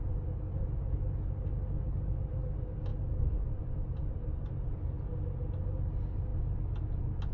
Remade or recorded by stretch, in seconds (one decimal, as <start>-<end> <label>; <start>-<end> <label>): 0.0-7.3 recorded